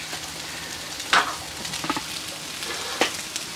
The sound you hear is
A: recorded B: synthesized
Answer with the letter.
A